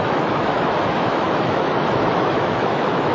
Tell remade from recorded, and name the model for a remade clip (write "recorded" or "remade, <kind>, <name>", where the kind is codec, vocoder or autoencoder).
remade, autoencoder, DAC-VAE